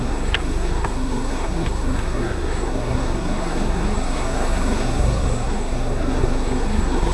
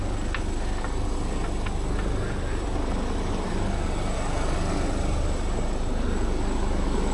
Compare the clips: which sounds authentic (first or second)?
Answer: second